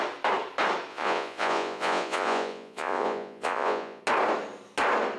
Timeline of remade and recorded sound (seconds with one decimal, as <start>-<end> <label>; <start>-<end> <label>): 0.0-0.9 recorded; 0.9-4.0 remade; 4.0-5.2 recorded